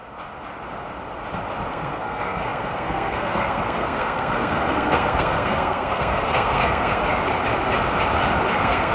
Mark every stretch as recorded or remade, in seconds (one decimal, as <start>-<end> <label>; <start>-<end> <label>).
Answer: 0.0-1.7 recorded; 1.7-7.0 remade; 7.0-8.5 recorded; 8.5-8.9 remade